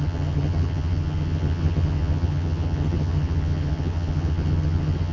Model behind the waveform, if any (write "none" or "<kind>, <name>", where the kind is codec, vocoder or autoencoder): vocoder, HiFi-GAN